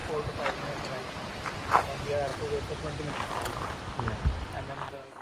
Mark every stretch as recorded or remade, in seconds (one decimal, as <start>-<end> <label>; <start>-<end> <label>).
0.0-1.0 remade; 1.0-5.2 recorded